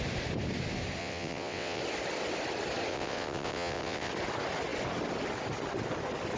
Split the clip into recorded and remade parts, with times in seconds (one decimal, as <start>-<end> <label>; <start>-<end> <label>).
0.0-1.0 recorded; 1.0-1.8 remade; 1.8-2.9 recorded; 2.9-4.1 remade; 4.1-6.4 recorded